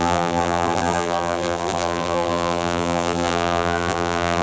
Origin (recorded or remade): remade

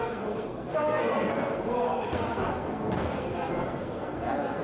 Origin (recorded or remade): remade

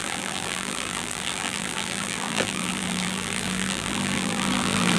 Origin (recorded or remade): remade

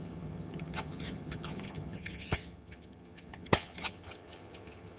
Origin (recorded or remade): remade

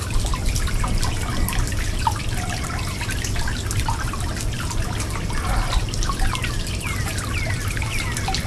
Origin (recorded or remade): recorded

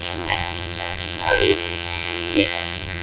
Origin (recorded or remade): remade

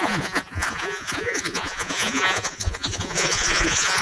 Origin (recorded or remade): remade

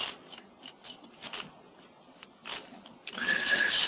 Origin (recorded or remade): recorded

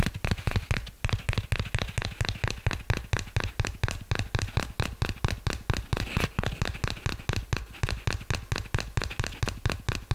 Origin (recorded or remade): recorded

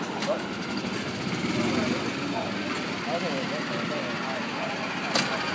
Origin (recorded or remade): recorded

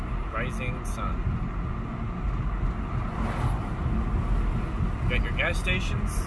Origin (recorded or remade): recorded